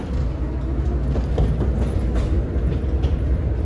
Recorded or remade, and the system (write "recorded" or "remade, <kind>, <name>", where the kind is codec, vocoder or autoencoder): recorded